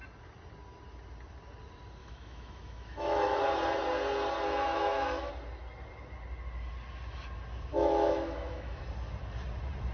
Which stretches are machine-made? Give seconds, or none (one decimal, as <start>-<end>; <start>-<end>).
2.0-3.4; 4.7-5.3; 7.7-8.8